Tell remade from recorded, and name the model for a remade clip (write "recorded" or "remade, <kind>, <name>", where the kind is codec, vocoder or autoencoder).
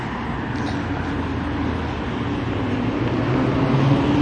recorded